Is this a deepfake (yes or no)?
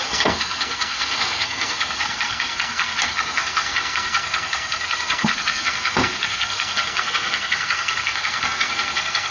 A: yes